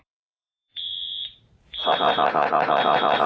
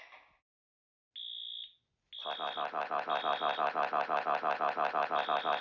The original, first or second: second